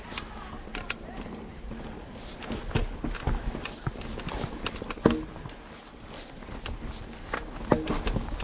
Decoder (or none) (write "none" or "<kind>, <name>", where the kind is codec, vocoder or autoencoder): none